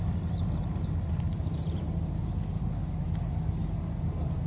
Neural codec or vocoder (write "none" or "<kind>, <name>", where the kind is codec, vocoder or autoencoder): none